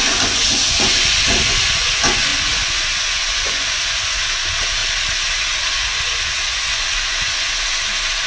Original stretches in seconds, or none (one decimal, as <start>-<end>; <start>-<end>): 4.8-5.4

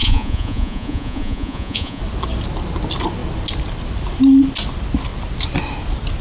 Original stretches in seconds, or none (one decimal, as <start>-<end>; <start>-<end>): 2.0-6.2

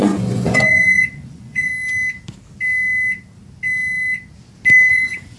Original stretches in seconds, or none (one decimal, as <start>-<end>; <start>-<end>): 1.7-4.9

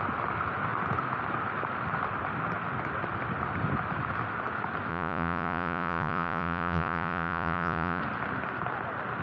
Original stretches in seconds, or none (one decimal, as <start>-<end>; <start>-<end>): 0.0-4.9; 8.0-9.2